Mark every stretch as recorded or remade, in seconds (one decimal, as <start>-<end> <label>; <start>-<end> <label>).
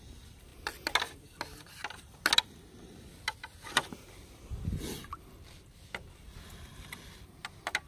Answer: 0.0-7.9 recorded